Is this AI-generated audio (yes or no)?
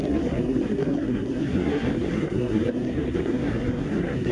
yes